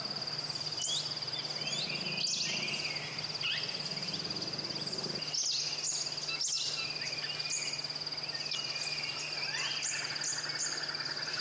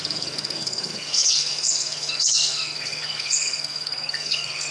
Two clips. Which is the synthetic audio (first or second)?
second